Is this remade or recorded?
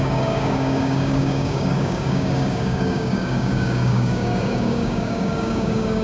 remade